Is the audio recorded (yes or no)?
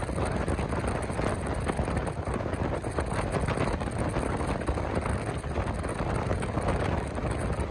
yes